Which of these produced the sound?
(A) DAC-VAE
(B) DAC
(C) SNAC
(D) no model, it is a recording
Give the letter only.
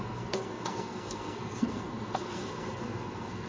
C